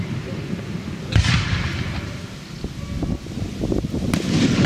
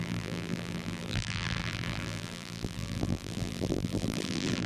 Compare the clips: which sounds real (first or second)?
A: first